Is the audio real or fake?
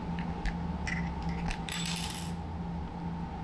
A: real